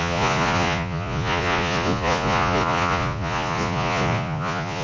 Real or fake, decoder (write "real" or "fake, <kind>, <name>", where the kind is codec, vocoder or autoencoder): fake, vocoder, Vocos